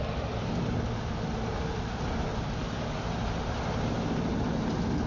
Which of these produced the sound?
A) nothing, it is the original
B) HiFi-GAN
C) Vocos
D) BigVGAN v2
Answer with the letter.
A